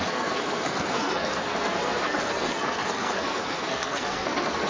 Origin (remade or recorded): remade